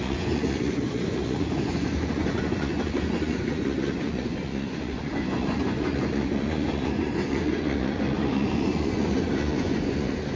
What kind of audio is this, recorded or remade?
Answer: remade